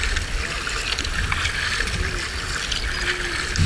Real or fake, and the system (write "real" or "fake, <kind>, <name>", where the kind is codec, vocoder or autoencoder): real